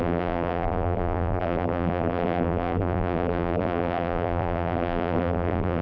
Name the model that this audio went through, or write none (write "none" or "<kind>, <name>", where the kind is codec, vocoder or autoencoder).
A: vocoder, BigVGAN v2